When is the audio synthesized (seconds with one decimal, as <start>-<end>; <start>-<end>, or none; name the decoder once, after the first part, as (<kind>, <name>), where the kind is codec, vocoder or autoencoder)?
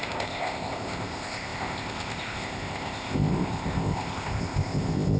0.0-5.2 (codec, ZipCodec)